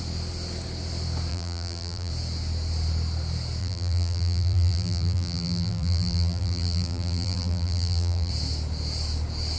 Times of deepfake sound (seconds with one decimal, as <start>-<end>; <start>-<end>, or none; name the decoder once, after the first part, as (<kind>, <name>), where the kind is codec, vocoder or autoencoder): 1.3-2.1 (vocoder, BigVGAN v2); 3.6-8.3